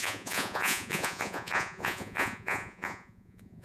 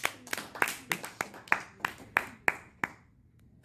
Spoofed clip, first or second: first